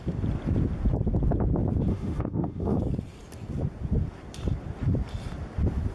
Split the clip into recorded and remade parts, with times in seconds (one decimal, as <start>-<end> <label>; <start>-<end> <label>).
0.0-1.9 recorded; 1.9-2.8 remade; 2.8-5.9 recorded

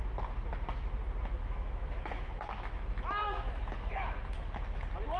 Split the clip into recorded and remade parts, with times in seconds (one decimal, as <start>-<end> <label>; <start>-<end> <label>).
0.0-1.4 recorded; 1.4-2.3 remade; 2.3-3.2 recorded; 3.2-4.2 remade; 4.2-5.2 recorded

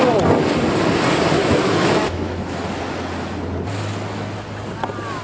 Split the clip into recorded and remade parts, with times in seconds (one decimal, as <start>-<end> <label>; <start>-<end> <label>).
0.0-1.4 recorded; 1.4-2.4 remade; 2.4-5.2 recorded

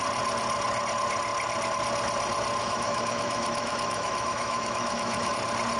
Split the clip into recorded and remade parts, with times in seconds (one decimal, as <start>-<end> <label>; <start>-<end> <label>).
0.0-2.6 recorded; 2.6-5.3 remade; 5.3-5.8 recorded

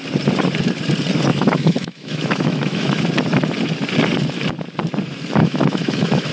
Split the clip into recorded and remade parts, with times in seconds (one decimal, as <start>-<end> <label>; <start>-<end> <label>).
0.0-1.3 recorded; 1.3-3.0 remade; 3.0-5.4 recorded; 5.4-6.3 remade

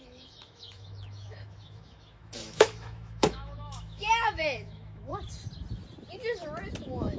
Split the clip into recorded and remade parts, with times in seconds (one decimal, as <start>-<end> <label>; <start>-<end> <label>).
0.0-5.1 remade; 5.1-6.8 recorded; 6.8-7.2 remade

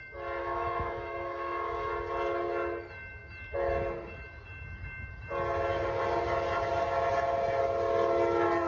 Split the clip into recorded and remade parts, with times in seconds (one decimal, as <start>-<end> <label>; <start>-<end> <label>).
0.0-0.4 recorded; 0.4-1.9 remade; 1.9-8.7 recorded